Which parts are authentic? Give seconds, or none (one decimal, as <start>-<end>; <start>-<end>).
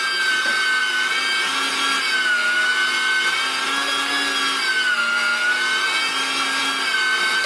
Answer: 0.0-7.5